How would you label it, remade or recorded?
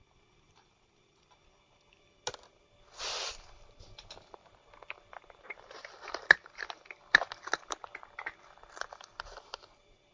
recorded